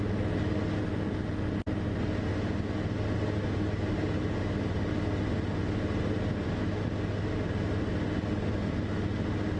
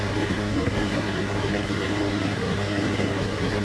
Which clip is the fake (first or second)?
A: second